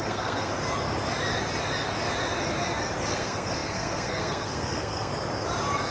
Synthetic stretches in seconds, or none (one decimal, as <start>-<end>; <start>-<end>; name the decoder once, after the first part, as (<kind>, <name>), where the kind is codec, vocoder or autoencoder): 0.0-0.5 (codec, SNAC); 3.1-5.1